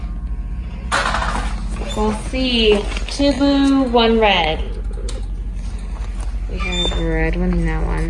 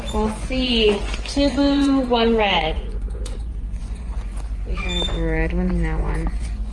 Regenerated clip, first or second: second